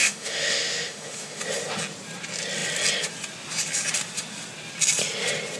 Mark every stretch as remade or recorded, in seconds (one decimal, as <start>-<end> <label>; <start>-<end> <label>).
0.0-1.4 remade; 1.4-5.6 recorded